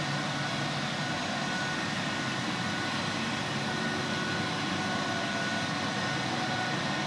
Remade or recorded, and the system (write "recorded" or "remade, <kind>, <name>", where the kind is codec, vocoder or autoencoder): recorded